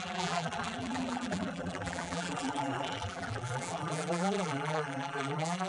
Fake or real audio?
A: fake